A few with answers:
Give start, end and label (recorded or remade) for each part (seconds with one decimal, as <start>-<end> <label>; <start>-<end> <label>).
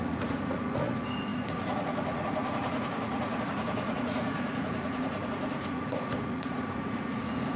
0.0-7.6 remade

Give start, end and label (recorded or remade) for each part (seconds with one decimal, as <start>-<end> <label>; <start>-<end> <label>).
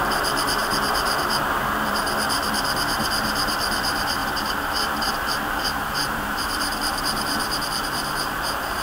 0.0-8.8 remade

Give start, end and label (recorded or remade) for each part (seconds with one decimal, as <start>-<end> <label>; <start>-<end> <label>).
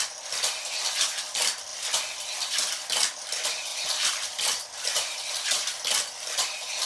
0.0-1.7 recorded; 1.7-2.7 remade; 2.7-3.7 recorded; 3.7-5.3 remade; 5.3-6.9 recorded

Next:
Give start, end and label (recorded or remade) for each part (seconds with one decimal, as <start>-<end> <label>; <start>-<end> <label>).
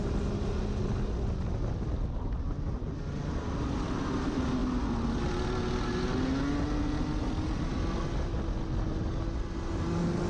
0.0-10.3 recorded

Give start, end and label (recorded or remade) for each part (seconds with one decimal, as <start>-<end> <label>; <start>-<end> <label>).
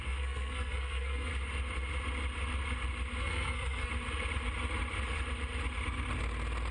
0.0-1.3 remade; 1.3-3.2 recorded; 3.2-3.9 remade; 3.9-6.7 recorded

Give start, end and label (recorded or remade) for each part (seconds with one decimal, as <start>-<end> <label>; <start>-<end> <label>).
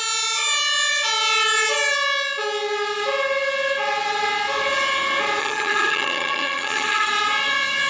0.0-5.4 recorded; 5.4-7.1 remade; 7.1-7.9 recorded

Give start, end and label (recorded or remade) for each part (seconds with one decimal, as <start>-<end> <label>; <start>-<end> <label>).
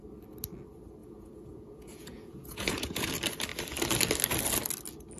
0.0-1.0 recorded; 1.0-3.1 remade; 3.1-5.2 recorded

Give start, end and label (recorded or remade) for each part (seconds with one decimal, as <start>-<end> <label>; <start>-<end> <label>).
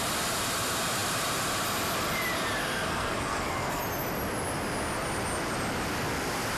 0.0-2.6 recorded; 2.6-3.8 remade; 3.8-6.6 recorded